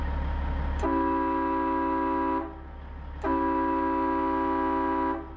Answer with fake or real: real